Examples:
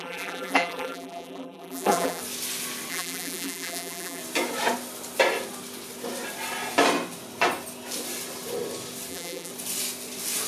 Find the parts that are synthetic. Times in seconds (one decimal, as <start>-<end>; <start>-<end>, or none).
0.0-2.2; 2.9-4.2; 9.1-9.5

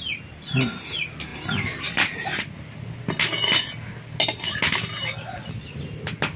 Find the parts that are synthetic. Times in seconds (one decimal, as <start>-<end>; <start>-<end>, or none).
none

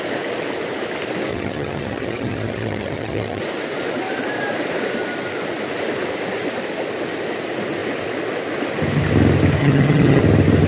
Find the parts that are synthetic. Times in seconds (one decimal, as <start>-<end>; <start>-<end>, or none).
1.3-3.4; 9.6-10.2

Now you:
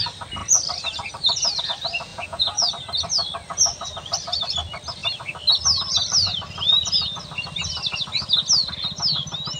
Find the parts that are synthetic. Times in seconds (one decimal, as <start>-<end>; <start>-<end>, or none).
2.1-2.7

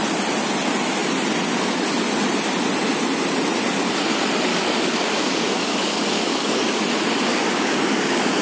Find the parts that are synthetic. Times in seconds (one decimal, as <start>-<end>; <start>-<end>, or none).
4.5-6.8; 7.3-8.4

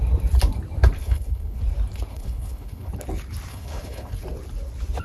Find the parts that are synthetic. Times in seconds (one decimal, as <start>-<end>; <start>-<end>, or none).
1.0-1.6; 2.1-2.9; 3.5-4.2